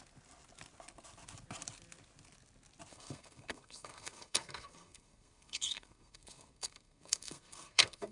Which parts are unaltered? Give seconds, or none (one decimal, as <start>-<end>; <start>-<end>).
0.0-2.9